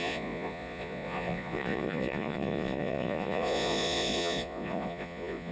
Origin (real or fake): fake